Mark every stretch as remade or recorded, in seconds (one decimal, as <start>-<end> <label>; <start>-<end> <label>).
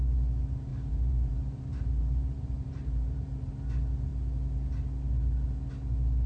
0.0-0.7 recorded; 0.7-3.5 remade; 3.5-6.3 recorded